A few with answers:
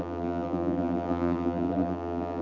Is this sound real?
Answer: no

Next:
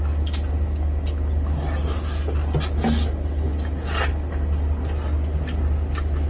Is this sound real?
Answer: yes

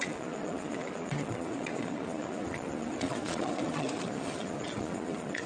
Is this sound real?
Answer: no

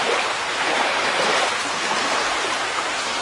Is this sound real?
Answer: no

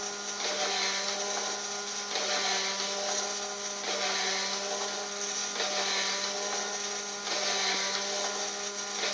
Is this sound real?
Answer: yes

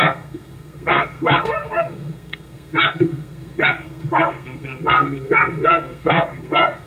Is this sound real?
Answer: no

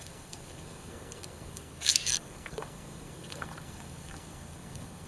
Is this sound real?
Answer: no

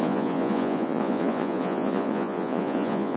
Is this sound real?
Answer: no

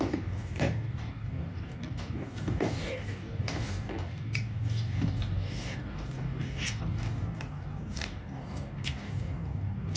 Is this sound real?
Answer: no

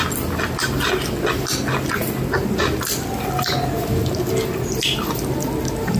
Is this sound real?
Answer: yes